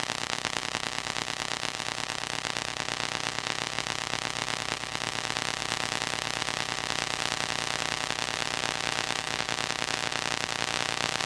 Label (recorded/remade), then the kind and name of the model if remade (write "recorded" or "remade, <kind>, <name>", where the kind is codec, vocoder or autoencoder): recorded